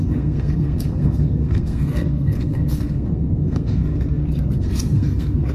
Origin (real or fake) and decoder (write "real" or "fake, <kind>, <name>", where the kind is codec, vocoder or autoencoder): fake, codec, SNAC